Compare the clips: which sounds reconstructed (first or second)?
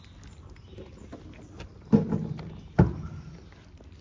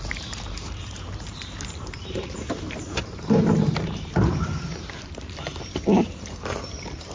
second